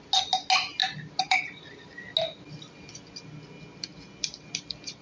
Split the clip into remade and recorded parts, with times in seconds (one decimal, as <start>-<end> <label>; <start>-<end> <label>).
0.0-0.8 recorded; 0.8-1.4 remade; 1.4-3.9 recorded; 3.9-4.5 remade; 4.5-5.0 recorded